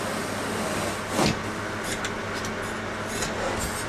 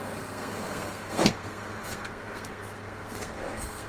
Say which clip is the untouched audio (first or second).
first